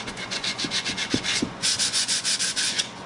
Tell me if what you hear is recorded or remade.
remade